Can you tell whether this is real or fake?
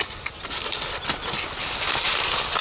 real